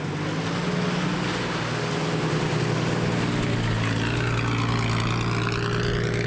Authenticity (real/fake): real